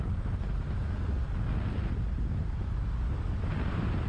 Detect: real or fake real